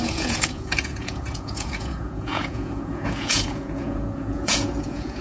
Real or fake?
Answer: fake